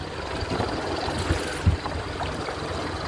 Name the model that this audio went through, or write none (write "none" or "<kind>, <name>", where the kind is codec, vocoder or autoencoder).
none